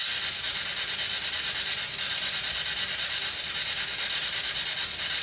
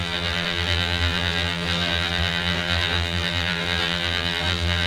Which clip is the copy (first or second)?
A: second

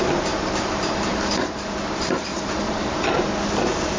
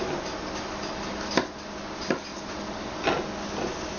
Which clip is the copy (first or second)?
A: first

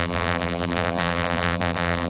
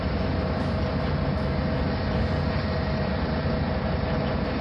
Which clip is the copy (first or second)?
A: first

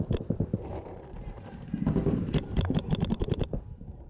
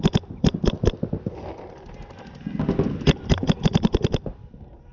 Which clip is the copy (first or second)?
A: first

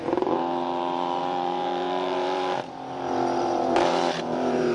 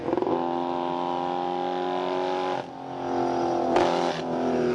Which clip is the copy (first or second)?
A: first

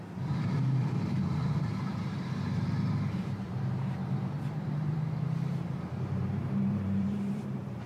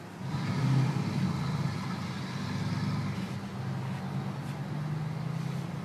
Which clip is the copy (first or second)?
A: first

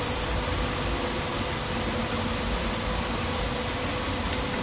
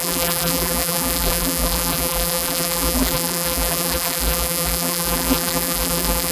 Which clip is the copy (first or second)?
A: second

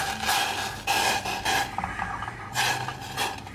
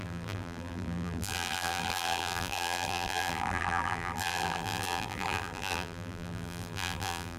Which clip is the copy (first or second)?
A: second